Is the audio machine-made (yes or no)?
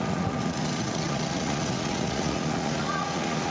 yes